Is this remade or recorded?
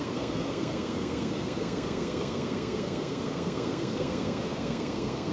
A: remade